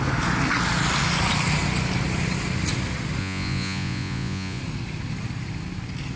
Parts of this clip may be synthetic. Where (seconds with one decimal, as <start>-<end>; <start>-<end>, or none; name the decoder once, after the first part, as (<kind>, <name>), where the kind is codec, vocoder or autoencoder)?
3.2-4.6 (vocoder, Vocos)